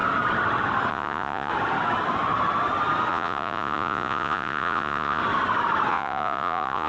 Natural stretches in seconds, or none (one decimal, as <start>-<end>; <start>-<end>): 0.0-0.9; 1.5-3.1; 5.2-5.9